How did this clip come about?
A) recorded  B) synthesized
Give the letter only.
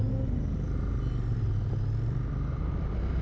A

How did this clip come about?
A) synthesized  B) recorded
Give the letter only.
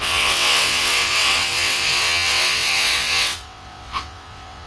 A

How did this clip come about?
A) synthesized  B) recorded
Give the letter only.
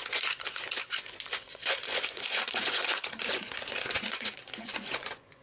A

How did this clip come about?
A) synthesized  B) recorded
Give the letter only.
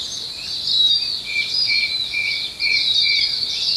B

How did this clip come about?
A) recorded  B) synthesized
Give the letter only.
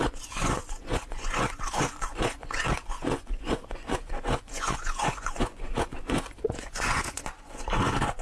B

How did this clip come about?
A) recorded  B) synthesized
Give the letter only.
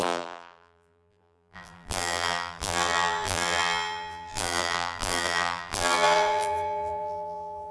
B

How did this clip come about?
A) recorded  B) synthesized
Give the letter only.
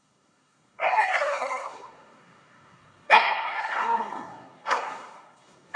B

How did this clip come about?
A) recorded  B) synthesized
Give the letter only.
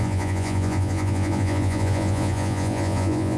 B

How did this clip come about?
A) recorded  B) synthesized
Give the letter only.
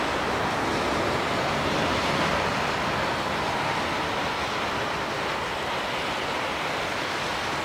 A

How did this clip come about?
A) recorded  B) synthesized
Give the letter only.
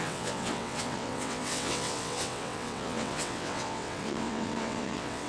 B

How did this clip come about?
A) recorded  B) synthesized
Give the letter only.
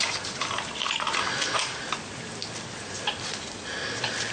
A